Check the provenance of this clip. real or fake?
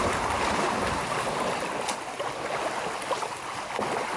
real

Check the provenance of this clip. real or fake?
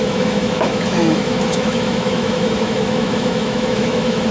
fake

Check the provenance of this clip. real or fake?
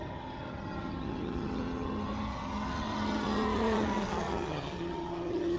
fake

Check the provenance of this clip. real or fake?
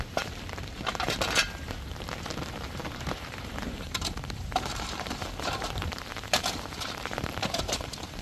fake